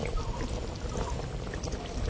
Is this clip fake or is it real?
real